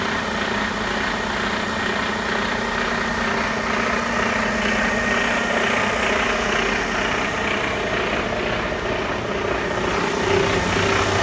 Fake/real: real